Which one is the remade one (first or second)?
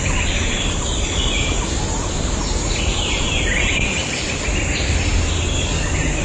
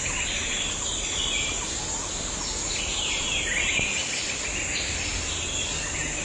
first